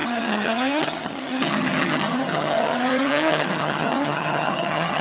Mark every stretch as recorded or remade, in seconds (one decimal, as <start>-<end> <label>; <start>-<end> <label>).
0.0-5.0 remade